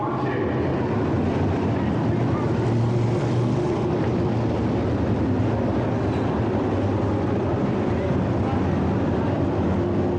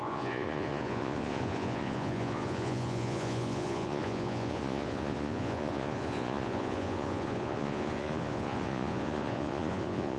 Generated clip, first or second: second